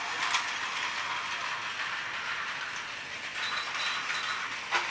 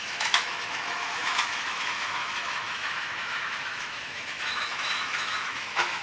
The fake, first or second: second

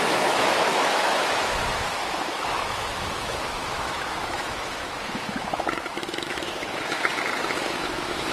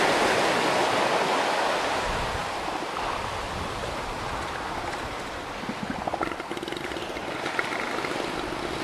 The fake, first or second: first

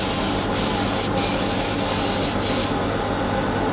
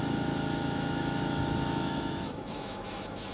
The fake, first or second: second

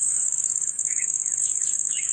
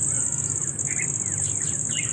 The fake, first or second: first